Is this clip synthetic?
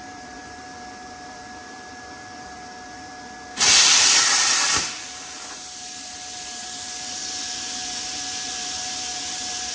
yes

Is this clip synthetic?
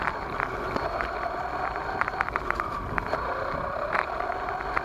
no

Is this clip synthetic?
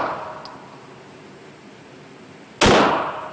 no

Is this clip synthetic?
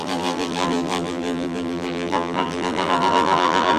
yes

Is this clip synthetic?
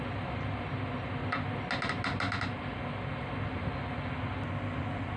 no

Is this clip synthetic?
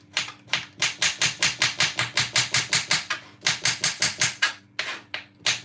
no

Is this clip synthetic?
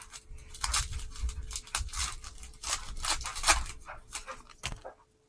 no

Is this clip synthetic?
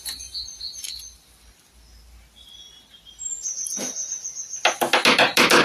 no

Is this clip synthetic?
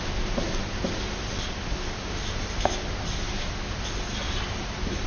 no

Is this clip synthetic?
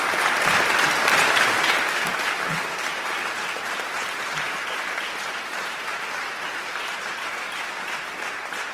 yes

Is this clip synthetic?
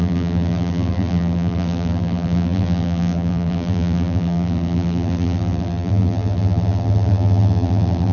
yes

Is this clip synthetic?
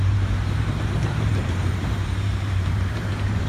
yes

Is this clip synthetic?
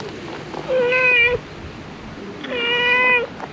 no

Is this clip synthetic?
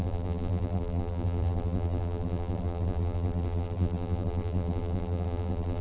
yes